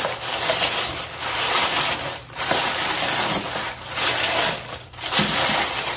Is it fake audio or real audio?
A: real